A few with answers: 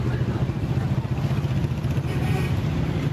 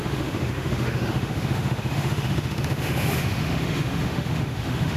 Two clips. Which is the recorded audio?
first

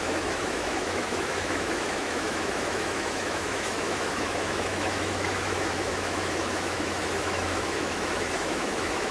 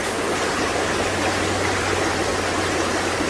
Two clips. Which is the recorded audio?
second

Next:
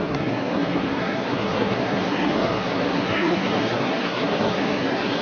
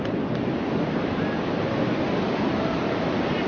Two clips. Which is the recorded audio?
second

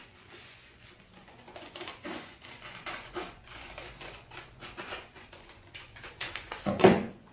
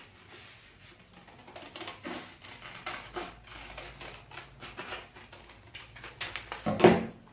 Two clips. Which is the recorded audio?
second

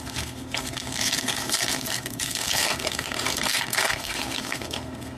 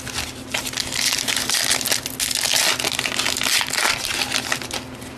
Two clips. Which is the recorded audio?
second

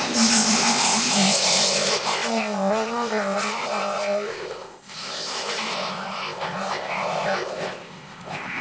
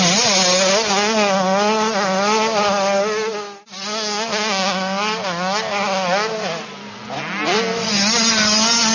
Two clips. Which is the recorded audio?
second